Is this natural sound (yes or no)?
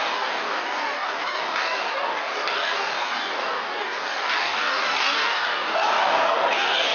no